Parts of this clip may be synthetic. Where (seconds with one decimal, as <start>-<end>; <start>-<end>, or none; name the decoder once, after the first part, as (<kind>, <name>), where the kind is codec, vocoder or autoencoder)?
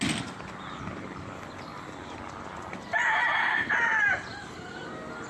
none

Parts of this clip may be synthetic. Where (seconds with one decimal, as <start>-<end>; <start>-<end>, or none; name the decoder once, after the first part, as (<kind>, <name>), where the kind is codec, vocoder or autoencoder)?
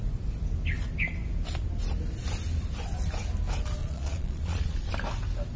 3.8-4.9 (vocoder, Vocos)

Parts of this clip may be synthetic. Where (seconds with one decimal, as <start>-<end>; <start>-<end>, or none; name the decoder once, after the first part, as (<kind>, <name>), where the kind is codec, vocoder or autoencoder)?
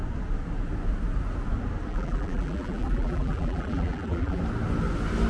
1.9-4.4 (vocoder, BigVGAN v2)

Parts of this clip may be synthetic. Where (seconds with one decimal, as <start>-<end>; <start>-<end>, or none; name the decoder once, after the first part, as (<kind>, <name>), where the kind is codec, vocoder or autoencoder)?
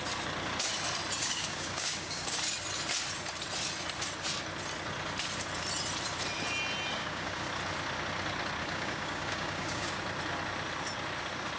1.2-2.4 (codec, DAC); 6.9-7.5; 8.6-9.9